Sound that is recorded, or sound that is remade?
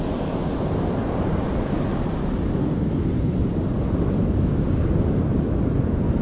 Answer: recorded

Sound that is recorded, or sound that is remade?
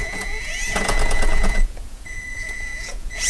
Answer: remade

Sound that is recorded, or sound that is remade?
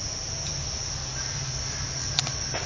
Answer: recorded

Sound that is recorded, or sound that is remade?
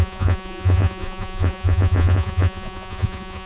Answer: remade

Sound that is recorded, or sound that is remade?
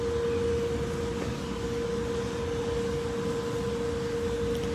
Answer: recorded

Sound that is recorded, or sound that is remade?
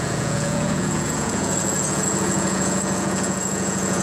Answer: remade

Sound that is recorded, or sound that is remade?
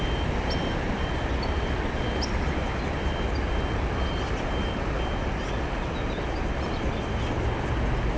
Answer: recorded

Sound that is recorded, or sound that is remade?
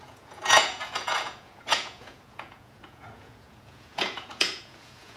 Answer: remade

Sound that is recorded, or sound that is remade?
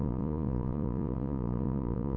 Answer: remade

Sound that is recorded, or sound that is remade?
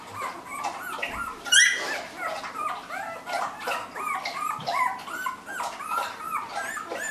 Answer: recorded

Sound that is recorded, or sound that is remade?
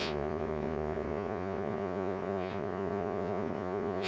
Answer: remade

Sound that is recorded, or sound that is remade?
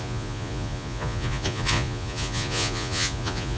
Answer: remade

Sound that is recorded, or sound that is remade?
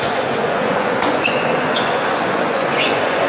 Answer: remade